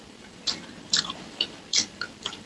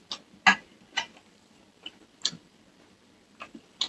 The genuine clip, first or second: second